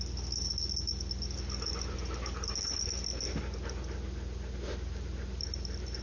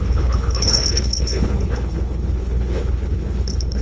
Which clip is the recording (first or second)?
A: first